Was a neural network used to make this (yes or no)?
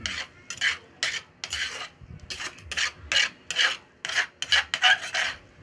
no